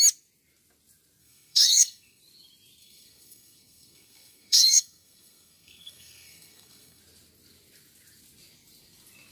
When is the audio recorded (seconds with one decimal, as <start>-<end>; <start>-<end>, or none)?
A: 0.0-1.2; 2.2-2.8; 7.0-9.3